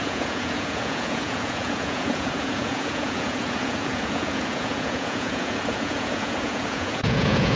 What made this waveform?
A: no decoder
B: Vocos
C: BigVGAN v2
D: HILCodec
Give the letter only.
B